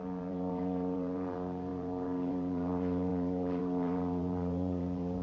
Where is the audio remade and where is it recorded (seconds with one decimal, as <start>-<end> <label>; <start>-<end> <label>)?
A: 0.0-5.2 remade

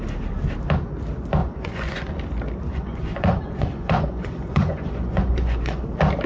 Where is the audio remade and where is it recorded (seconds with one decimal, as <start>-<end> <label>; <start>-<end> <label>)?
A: 0.0-1.4 recorded; 1.4-2.1 remade; 2.1-2.7 recorded; 2.7-5.8 remade; 5.8-6.3 recorded

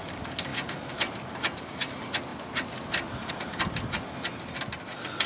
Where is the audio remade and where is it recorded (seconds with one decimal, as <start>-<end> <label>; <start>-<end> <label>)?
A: 0.0-5.3 recorded

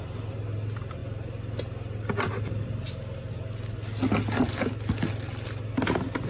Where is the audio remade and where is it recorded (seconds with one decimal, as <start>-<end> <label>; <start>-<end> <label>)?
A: 0.0-6.3 recorded

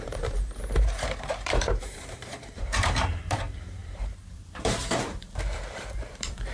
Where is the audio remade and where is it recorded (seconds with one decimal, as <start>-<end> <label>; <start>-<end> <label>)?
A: 0.0-6.5 remade